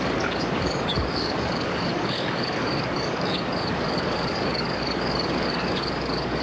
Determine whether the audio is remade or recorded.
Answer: remade